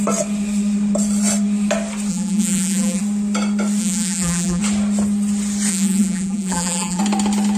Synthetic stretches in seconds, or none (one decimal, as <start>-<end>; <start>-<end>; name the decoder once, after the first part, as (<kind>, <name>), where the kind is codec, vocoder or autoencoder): 2.1-3.0 (vocoder, BigVGAN v2); 3.8-4.6; 5.7-7.0